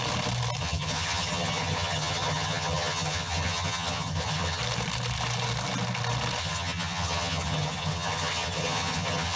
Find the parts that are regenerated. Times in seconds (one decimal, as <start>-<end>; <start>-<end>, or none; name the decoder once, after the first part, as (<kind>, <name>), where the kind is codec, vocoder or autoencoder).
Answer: 0.6-4.6 (vocoder, HiFi-GAN); 6.4-9.4

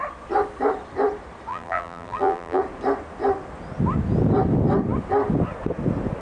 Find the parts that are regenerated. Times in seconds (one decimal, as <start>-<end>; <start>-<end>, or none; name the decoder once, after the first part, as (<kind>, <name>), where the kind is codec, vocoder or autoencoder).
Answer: 1.5-2.6 (vocoder, BigVGAN v2)